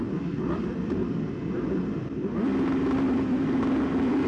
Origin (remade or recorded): recorded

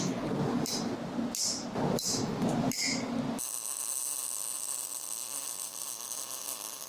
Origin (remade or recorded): recorded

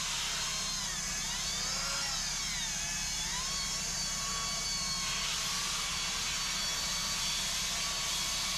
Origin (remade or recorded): recorded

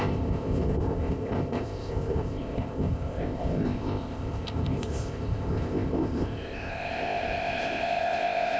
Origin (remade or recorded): remade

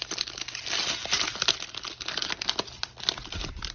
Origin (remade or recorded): recorded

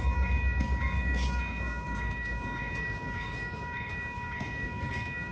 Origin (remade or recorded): remade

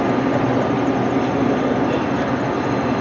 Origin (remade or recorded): recorded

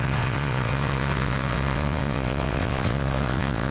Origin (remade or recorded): remade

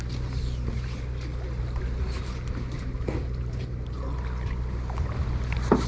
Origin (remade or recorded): recorded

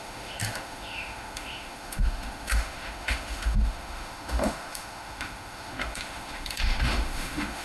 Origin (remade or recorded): remade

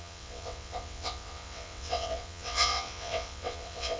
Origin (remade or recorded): remade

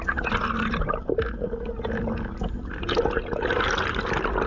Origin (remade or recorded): recorded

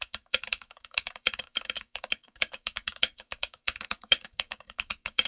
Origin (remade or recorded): remade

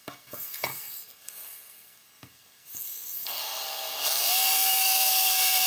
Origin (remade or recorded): remade